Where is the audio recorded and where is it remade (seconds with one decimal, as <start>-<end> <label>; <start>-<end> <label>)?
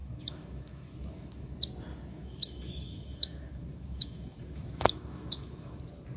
0.0-1.6 remade; 1.6-2.1 recorded; 2.1-5.8 remade; 5.8-6.2 recorded